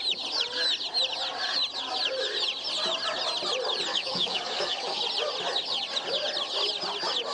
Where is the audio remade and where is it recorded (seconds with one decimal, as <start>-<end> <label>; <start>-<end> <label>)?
0.0-3.9 recorded; 3.9-5.0 remade; 5.0-7.3 recorded